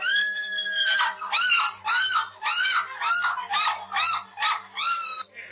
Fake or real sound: real